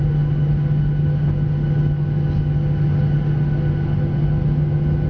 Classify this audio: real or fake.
real